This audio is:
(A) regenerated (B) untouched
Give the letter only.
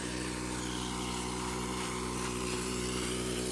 A